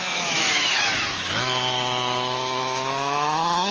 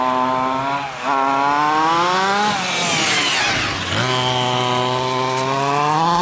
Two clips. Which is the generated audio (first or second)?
first